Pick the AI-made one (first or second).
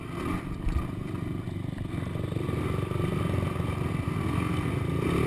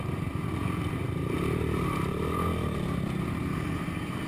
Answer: second